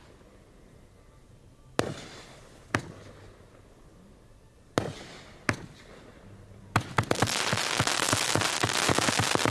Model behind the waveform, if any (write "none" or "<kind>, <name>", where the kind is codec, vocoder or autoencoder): none